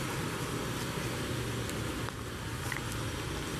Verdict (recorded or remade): recorded